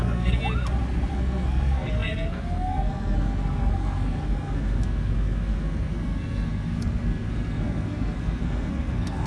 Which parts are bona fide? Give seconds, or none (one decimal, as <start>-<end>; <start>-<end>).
0.4-1.1